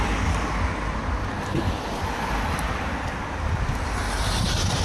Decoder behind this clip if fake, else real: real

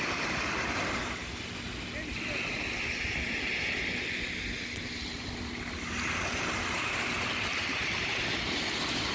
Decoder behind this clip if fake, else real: real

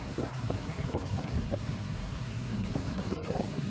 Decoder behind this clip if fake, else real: fake, codec, SNAC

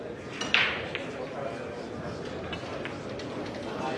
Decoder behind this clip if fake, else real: real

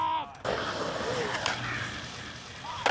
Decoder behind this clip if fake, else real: real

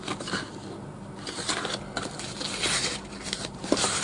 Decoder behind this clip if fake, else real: real